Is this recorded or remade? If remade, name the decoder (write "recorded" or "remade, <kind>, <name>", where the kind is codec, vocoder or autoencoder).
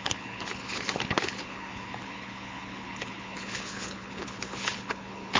remade, codec, HILCodec